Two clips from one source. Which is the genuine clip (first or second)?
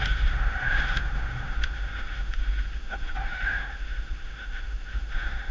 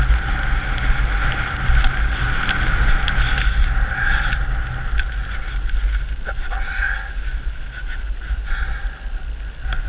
second